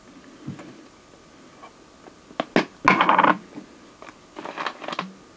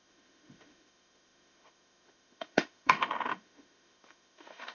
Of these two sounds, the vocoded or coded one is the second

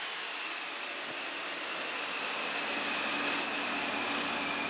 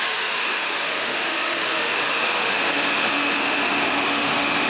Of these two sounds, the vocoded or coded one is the second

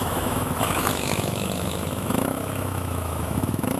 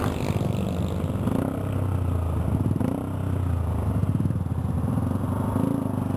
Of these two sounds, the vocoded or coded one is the first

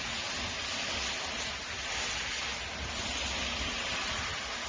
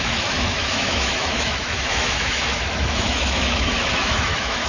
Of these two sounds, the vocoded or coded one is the second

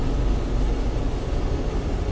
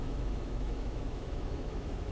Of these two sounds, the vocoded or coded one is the second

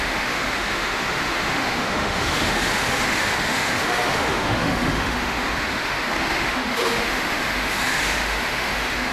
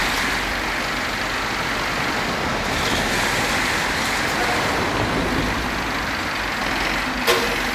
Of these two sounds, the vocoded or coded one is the first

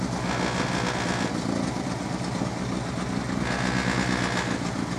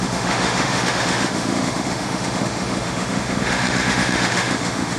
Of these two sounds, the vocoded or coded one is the second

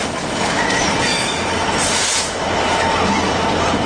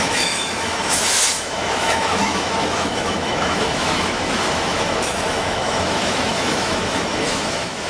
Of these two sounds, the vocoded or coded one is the second